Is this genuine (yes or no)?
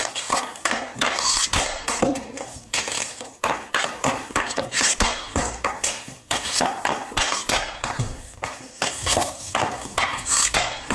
no